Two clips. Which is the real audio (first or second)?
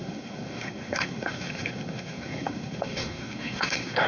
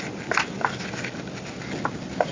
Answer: second